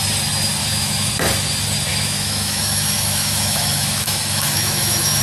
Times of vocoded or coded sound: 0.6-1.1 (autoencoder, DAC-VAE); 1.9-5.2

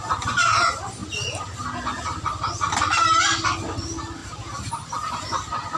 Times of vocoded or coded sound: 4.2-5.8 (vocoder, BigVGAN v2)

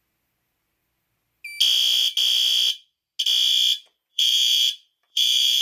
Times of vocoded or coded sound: 4.1-5.6 (vocoder, BigVGAN v2)

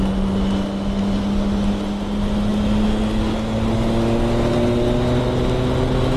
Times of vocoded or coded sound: none